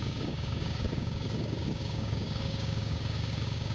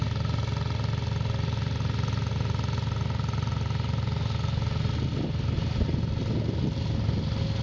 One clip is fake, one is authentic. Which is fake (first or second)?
first